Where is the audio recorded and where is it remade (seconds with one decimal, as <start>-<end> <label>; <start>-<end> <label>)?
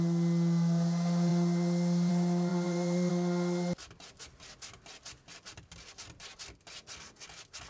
0.0-2.5 recorded; 2.5-3.1 remade; 3.1-7.7 recorded